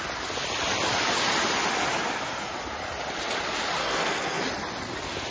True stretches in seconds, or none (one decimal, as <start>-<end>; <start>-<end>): 0.0-3.8; 4.4-5.3